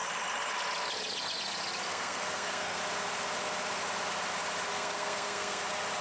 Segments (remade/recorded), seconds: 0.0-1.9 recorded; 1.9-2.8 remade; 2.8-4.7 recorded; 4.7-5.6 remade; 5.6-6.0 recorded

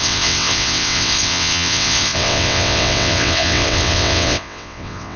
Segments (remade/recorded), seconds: 0.0-5.2 remade

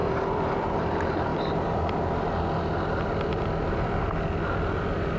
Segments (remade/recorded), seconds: 0.0-5.2 recorded

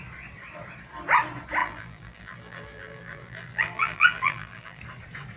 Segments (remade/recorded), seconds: 0.0-1.6 recorded; 1.6-4.8 remade; 4.8-5.4 recorded

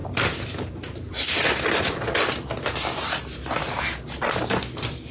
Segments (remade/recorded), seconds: 0.0-5.1 recorded

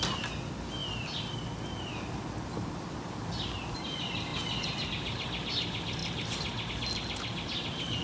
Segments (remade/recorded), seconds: 0.0-8.0 recorded